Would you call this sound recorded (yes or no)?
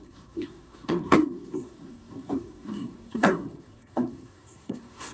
no